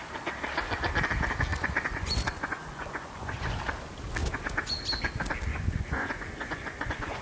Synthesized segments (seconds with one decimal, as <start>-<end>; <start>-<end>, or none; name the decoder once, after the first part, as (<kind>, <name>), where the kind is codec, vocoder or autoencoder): 1.5-3.6 (vocoder, Vocos); 4.2-4.8; 5.5-7.2

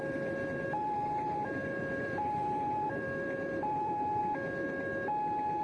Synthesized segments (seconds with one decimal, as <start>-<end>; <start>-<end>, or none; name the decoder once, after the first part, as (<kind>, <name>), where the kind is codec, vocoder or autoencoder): 0.0-4.2 (vocoder, BigVGAN v2)

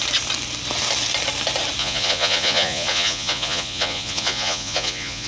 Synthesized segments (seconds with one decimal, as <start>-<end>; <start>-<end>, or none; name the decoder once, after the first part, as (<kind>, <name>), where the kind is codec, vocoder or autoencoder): 1.8-5.3 (vocoder, Vocos)

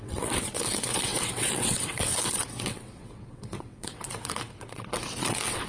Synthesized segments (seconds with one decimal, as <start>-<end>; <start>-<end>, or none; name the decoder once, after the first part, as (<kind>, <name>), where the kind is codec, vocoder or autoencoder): 0.0-5.7 (vocoder, WaveNeXt)